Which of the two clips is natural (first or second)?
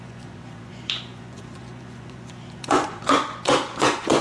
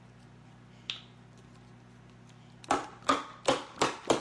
second